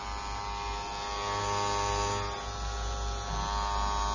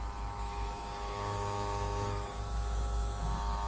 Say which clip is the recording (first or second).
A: first